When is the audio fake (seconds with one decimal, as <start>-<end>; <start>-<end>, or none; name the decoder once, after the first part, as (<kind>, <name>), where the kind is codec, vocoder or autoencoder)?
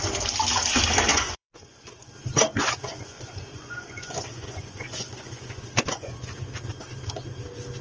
1.1-2.1 (vocoder, Vocos); 2.6-6.3